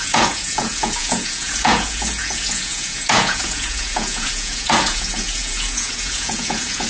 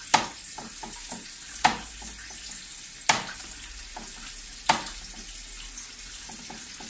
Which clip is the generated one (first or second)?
first